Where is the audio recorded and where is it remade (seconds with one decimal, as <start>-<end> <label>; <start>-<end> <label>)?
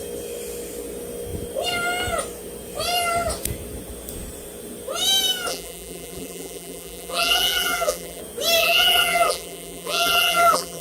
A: 0.0-5.5 recorded; 5.5-8.2 remade; 8.2-8.6 recorded; 8.6-10.8 remade